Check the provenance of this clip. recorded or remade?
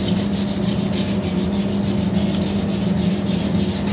recorded